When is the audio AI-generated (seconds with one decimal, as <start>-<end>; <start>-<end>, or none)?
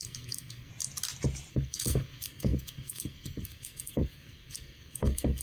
0.0-0.7; 1.5-5.4